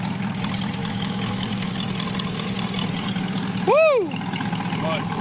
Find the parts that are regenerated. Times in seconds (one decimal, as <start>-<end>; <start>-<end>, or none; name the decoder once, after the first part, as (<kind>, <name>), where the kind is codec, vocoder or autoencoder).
0.8-1.7 (autoencoder, DAC-VAE)